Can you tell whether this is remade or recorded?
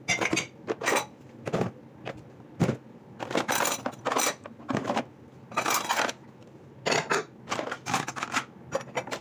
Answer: recorded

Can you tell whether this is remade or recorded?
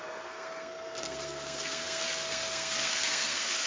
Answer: remade